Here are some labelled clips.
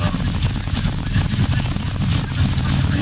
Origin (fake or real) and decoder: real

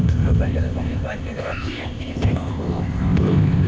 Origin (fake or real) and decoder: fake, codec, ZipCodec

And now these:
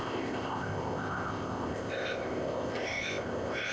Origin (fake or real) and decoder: fake, codec, ZipCodec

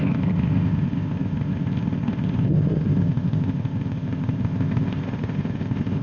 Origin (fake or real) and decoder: fake, codec, ZipCodec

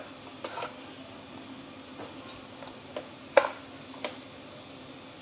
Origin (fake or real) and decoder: real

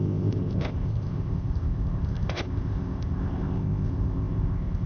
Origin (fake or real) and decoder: fake, codec, ZipCodec